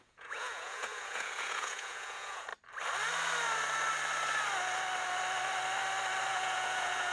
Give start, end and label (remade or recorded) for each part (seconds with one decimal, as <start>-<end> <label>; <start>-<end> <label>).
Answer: 0.0-2.5 remade; 2.5-6.3 recorded; 6.3-7.1 remade